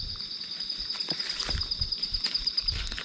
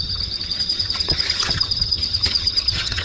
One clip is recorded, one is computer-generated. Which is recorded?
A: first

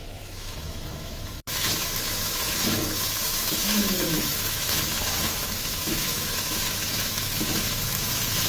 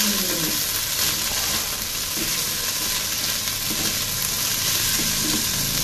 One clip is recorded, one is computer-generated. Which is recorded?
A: second